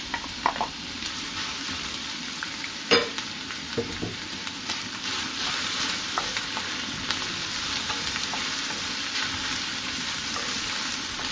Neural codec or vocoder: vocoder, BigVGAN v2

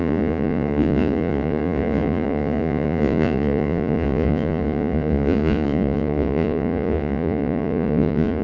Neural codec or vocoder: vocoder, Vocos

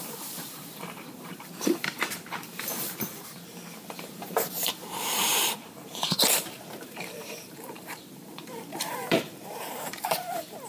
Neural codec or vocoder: vocoder, BigVGAN v2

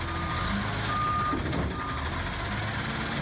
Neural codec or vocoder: none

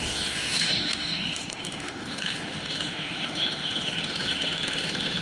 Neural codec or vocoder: autoencoder, DAC-VAE